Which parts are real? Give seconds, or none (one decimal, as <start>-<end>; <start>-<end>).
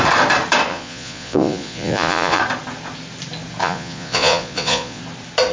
0.0-0.7; 2.4-3.6; 5.0-5.5